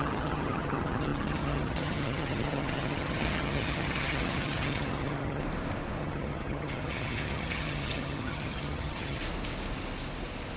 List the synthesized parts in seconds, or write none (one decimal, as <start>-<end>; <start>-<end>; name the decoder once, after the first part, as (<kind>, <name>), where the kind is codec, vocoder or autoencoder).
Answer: 0.0-5.4 (vocoder, HiFi-GAN); 6.0-9.2